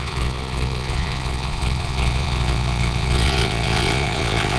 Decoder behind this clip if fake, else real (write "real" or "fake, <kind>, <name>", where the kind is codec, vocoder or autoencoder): fake, vocoder, Vocos